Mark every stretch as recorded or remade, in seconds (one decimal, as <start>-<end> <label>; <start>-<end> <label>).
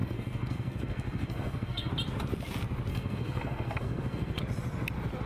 0.0-1.9 remade; 1.9-2.9 recorded; 2.9-4.4 remade; 4.4-5.3 recorded